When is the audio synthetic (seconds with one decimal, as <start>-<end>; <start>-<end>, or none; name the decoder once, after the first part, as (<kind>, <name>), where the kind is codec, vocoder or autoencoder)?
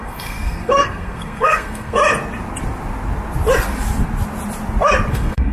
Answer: 0.0-2.0 (codec, SNAC); 5.1-5.5